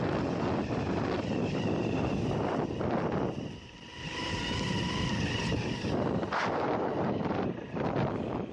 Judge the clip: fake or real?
real